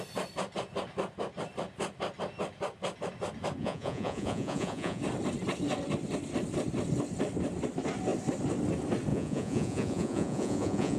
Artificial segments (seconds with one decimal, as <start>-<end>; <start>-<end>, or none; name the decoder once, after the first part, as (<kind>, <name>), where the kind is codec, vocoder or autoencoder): 3.6-5.0 (vocoder, Vocos); 9.1-11.0